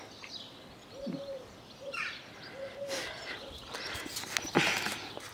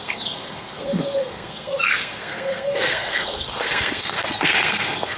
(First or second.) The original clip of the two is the first